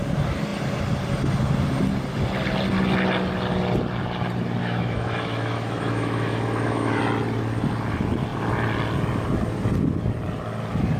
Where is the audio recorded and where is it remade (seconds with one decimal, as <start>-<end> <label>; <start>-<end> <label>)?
0.0-4.6 recorded; 4.6-7.0 remade; 7.0-11.0 recorded